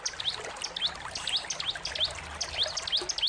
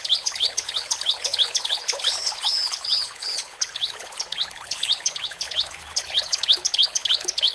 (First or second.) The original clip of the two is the first